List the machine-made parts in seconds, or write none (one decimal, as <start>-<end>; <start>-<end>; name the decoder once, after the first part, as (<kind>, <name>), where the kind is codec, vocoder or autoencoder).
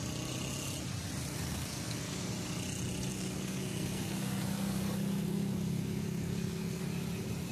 1.3-2.3 (codec, SNAC); 3.1-6.8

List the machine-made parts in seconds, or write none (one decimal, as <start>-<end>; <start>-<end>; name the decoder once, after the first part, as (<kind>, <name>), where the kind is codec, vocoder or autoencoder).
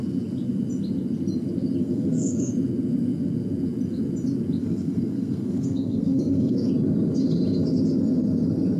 1.8-2.5 (codec, SNAC); 4.6-6.7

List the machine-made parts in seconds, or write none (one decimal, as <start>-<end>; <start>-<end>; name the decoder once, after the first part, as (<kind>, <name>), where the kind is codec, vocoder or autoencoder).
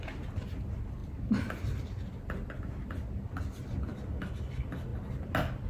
none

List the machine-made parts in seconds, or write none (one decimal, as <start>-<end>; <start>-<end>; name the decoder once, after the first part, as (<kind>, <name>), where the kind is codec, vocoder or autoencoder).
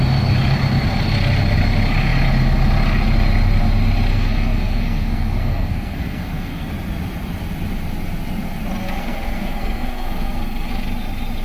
4.1-6.7 (codec, SNAC); 8.8-10.7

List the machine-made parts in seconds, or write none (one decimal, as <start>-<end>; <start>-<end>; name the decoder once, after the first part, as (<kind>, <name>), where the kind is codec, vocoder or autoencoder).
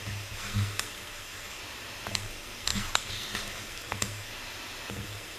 0.0-1.6 (codec, SNAC); 2.1-4.3; 4.9-5.4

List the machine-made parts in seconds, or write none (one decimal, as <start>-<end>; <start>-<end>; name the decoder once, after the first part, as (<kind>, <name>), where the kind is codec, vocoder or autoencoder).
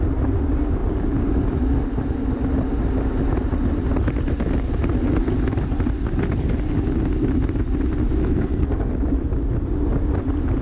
8.2-8.9 (codec, SNAC)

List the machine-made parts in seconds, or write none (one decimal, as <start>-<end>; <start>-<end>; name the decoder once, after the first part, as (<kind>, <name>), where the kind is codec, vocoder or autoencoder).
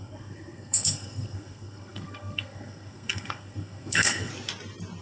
0.0-4.3 (codec, SNAC)